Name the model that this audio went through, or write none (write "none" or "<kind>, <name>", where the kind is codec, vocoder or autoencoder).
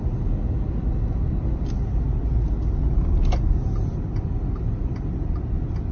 none